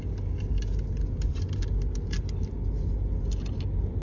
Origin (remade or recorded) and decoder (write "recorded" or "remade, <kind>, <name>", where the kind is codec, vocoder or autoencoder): recorded